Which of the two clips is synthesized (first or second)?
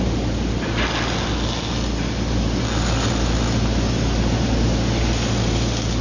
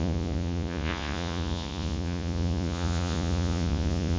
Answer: second